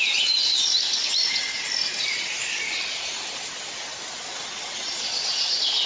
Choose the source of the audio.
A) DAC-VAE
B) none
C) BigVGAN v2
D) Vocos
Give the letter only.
B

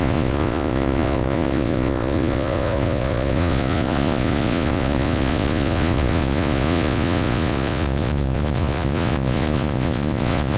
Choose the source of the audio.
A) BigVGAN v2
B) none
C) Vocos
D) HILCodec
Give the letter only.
C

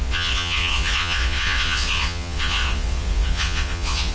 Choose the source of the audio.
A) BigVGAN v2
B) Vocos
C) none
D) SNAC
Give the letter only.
B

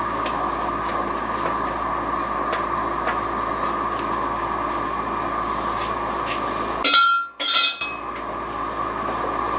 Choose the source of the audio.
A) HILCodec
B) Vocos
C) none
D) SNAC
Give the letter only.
C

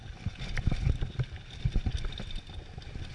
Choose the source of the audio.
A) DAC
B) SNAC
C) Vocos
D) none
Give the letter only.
D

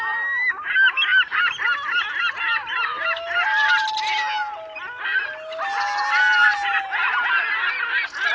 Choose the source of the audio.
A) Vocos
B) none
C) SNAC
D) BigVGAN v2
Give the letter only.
B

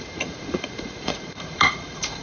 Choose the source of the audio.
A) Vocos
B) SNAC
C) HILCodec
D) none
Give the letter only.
A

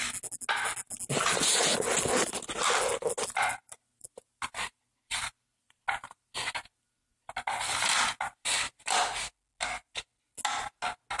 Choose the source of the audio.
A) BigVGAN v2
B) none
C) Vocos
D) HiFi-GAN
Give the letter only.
B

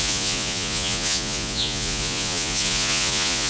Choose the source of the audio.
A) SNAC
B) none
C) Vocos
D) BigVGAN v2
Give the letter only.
C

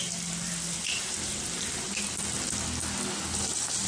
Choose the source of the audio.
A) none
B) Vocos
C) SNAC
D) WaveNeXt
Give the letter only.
A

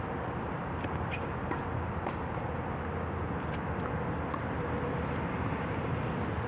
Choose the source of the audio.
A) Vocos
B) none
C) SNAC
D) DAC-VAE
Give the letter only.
B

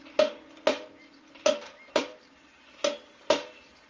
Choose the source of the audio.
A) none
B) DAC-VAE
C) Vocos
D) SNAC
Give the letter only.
A